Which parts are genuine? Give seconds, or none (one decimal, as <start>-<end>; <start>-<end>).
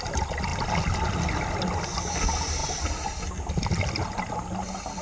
0.0-5.0